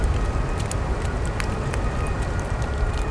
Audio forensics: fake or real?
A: real